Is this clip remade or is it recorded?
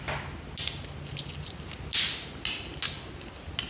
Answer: recorded